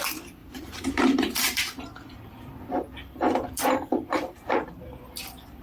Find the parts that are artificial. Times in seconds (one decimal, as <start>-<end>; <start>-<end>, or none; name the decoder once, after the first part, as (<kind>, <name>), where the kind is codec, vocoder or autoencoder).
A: 0.4-1.8 (vocoder, BigVGAN v2); 3.1-5.0